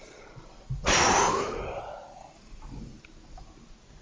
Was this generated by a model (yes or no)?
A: no